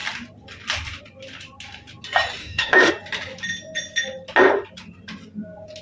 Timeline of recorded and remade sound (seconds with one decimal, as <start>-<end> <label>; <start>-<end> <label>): 0.0-2.4 recorded; 2.4-2.9 remade; 2.9-5.8 recorded